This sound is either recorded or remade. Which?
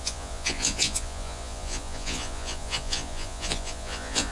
remade